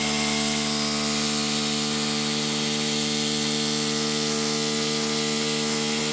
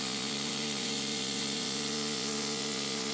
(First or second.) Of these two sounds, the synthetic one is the second